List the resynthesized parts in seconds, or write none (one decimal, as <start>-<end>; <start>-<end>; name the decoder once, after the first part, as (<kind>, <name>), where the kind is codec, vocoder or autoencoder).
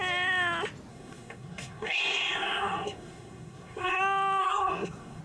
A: 0.9-4.0 (codec, SNAC); 4.4-5.2